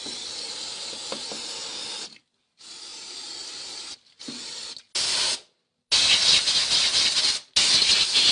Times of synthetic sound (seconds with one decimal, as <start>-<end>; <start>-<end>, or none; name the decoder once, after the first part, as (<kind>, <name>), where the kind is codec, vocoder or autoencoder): none